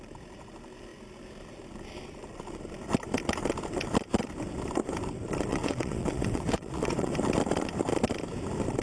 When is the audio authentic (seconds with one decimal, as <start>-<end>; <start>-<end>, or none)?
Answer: 0.0-5.5; 7.1-8.8